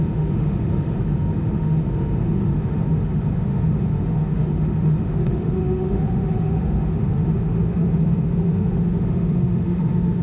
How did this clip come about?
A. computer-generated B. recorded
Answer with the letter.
A